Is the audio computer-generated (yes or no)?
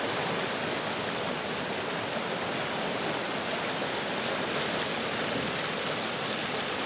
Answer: no